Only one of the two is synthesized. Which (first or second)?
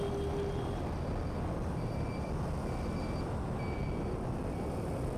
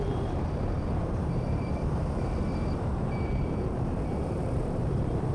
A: second